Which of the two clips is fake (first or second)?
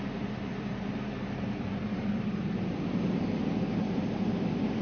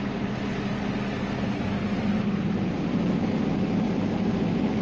first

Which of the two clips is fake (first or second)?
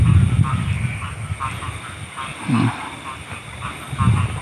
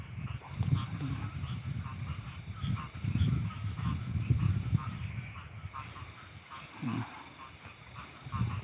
second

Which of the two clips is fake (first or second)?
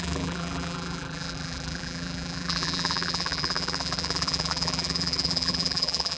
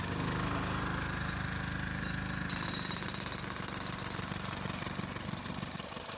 first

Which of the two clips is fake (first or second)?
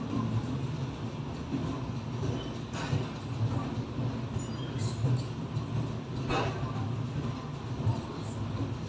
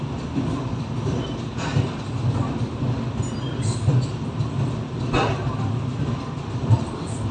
second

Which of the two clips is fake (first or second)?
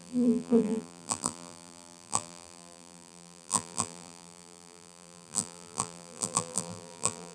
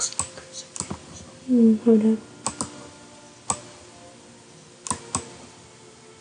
first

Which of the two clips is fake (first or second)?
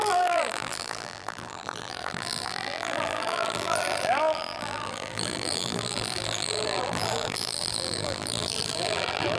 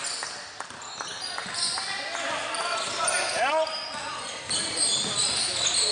first